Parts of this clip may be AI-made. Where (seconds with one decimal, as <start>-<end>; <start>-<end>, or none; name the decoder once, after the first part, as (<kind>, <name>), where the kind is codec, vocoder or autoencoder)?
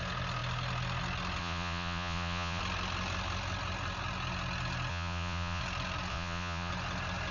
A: 1.4-2.6 (vocoder, Vocos); 4.9-5.6; 6.1-6.7